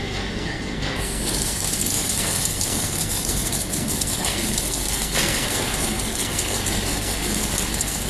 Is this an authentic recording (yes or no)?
no